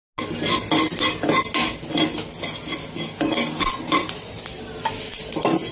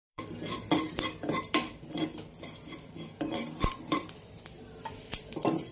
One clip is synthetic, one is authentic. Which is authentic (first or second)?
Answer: first